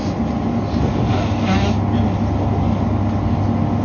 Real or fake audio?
real